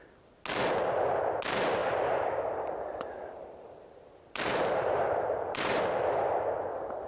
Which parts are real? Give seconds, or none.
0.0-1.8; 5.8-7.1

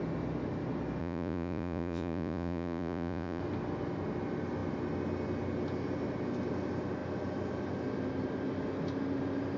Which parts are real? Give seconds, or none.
0.0-1.0; 3.4-9.6

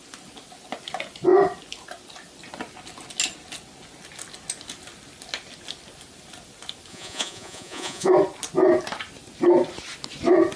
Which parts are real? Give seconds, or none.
0.0-6.9; 8.1-10.6

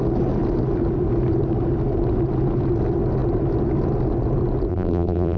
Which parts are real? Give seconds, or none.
0.0-4.7